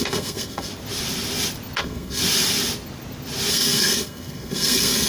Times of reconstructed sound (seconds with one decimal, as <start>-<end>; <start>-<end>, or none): 0.0-0.7; 1.8-2.2; 3.5-5.1